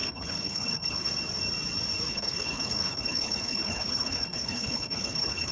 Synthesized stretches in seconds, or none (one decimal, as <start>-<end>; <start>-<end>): 0.0-1.1; 2.1-5.5